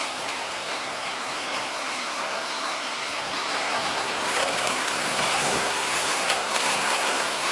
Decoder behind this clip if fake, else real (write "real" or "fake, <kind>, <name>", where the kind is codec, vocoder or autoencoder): fake, codec, SNAC